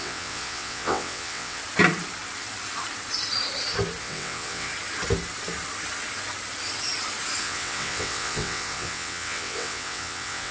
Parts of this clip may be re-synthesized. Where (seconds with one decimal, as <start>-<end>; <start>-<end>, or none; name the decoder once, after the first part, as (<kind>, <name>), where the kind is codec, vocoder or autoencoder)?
0.0-1.6 (vocoder, WaveNeXt); 4.0-4.7; 7.4-10.5